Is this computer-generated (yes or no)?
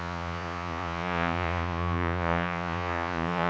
yes